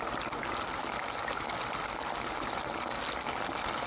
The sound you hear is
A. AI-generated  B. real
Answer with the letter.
B